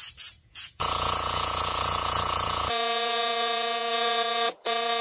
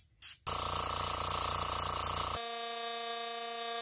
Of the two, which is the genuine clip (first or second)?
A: second